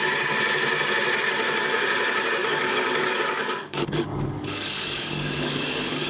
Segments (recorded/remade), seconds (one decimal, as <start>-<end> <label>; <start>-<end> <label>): 0.0-2.4 recorded; 2.4-6.1 remade